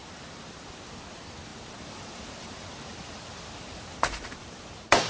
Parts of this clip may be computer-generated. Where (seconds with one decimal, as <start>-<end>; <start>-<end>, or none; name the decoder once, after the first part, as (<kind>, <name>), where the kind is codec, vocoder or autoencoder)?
0.0-0.7 (vocoder, BigVGAN v2); 1.5-4.6

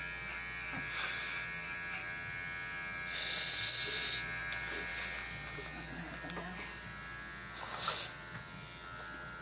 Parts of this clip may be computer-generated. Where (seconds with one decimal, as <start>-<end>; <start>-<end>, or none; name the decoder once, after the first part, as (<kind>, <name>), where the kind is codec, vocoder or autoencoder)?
none

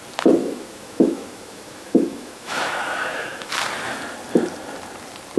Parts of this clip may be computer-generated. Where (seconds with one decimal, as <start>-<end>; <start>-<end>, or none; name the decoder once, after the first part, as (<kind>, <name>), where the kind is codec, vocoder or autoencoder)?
0.4-3.5 (autoencoder, DAC-VAE)

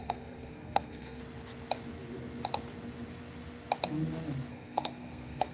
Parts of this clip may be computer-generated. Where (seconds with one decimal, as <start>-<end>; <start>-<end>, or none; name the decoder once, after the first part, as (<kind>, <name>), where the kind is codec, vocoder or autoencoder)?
0.0-1.2 (codec, SNAC); 4.5-5.5

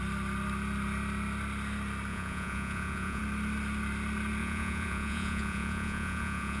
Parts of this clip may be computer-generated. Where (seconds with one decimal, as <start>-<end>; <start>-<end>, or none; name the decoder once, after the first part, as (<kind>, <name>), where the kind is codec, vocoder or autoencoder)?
2.1-3.2 (vocoder, Vocos); 4.4-6.6